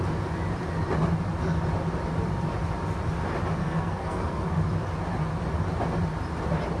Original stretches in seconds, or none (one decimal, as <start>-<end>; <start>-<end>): 0.0-3.6; 4.6-6.8